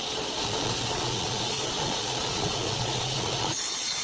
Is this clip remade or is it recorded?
remade